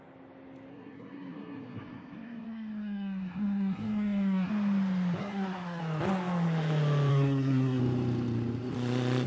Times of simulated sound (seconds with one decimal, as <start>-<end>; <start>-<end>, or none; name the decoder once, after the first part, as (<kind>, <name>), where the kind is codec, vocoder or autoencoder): 0.7-4.5 (codec, SNAC); 5.2-5.8; 7.1-7.8